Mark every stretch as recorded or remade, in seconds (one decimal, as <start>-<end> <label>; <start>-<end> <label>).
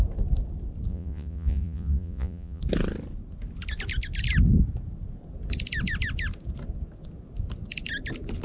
0.0-0.9 recorded; 0.9-2.6 remade; 2.6-8.4 recorded